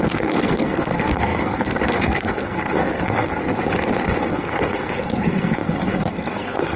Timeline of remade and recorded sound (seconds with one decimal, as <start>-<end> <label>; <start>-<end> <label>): 0.0-3.4 remade; 3.4-4.2 recorded; 4.2-6.8 remade